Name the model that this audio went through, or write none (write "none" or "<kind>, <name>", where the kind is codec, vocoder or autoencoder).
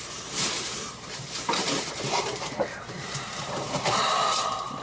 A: vocoder, BigVGAN v2